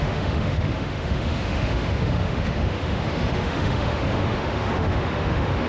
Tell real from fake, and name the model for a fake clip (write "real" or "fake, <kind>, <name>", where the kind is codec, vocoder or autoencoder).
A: fake, autoencoder, DAC-VAE